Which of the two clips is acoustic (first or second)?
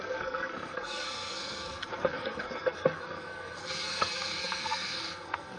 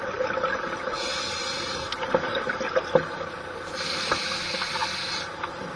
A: second